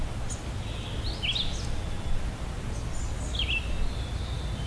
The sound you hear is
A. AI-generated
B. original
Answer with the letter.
B